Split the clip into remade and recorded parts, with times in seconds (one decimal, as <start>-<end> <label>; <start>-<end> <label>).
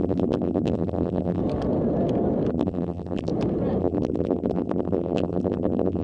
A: 0.0-1.4 remade; 1.4-2.5 recorded; 2.5-3.3 remade; 3.3-3.8 recorded; 3.8-6.0 remade